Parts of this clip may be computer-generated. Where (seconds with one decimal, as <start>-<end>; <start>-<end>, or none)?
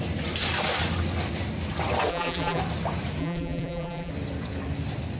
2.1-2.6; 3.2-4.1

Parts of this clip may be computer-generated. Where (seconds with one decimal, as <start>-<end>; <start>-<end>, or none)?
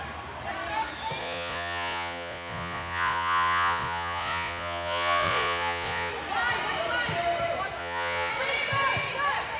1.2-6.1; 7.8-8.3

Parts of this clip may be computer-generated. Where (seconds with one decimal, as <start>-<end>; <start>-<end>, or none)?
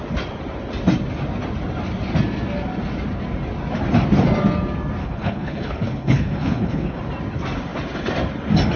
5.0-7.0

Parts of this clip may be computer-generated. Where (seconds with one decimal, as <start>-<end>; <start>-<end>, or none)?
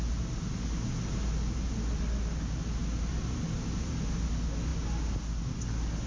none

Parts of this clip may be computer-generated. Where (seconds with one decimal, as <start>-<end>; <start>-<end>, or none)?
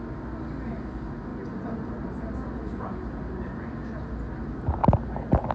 none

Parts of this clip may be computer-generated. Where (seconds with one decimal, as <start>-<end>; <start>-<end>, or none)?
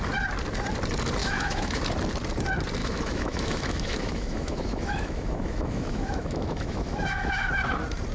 1.2-1.8; 2.8-7.5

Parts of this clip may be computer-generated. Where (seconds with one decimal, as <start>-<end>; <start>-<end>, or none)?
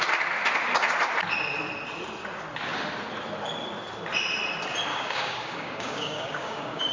4.9-6.9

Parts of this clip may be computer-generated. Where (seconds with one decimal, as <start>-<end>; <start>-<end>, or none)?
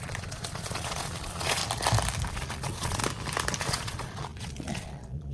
0.0-1.6; 2.3-3.0; 3.6-5.3